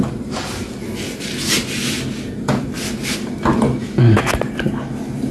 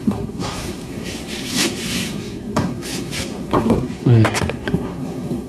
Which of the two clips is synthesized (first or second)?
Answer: second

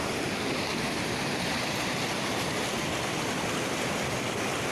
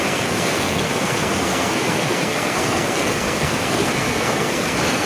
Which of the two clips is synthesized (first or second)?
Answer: second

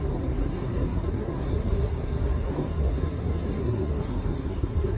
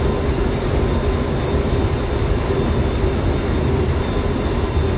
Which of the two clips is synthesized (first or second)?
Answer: first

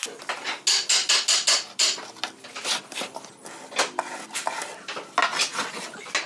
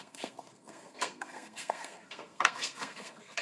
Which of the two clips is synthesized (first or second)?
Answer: second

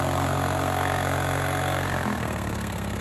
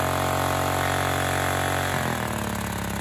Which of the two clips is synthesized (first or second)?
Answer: first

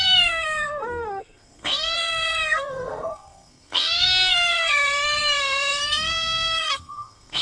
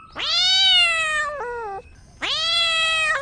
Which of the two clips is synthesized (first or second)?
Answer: first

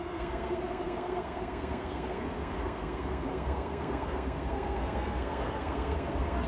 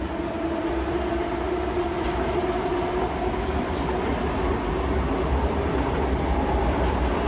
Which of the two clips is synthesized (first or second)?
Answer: first